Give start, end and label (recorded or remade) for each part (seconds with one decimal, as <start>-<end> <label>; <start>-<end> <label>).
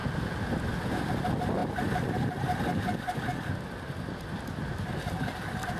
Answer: 0.0-5.8 recorded